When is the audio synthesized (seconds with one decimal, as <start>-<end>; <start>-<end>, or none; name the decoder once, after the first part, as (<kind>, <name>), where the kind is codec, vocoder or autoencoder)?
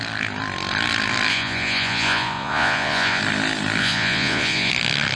1.3-3.2 (vocoder, Vocos); 3.8-4.7